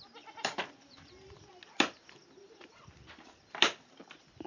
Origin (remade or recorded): recorded